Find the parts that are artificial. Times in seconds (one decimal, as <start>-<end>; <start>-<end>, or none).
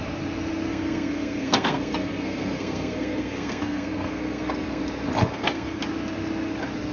0.7-4.8; 5.2-5.8